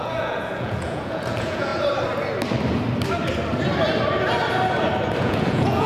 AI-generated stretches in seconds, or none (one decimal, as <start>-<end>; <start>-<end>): 0.0-1.7; 5.2-5.9